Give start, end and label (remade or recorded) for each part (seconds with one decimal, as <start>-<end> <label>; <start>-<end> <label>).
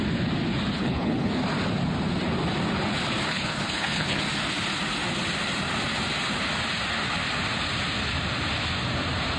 0.0-0.7 recorded; 0.7-1.3 remade; 1.3-3.3 recorded; 3.3-4.2 remade; 4.2-9.4 recorded